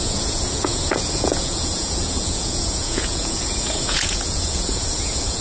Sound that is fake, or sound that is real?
fake